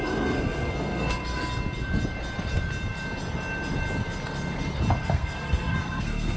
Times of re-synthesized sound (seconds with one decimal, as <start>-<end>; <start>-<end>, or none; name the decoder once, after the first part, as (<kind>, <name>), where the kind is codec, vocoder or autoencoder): 0.0-1.2 (codec, SNAC); 5.0-6.4